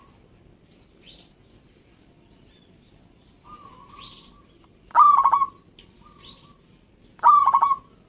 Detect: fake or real real